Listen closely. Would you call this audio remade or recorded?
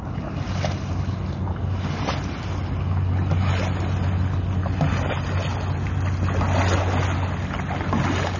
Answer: recorded